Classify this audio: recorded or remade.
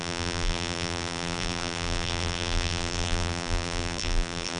remade